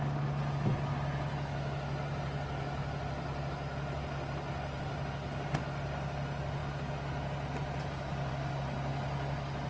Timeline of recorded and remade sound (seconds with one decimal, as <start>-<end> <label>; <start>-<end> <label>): 0.0-9.7 recorded